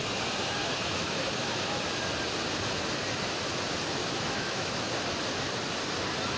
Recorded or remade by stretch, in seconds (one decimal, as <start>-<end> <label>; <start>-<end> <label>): 0.0-0.6 recorded; 0.6-1.8 remade; 1.8-4.0 recorded; 4.0-4.9 remade; 4.9-6.4 recorded